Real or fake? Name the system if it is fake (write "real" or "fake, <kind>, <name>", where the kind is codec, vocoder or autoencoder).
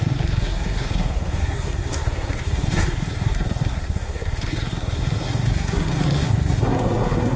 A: fake, codec, SNAC